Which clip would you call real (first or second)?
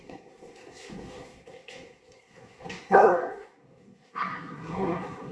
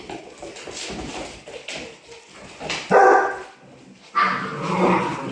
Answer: second